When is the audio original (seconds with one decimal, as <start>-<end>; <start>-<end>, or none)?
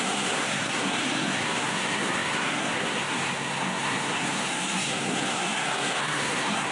none